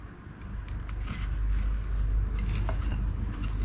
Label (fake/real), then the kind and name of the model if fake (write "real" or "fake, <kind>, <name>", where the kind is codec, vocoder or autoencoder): real